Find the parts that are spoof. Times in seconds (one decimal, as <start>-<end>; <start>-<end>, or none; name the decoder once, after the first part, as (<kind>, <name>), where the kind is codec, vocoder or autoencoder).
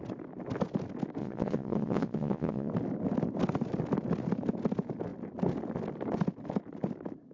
1.2-2.7 (vocoder, Vocos)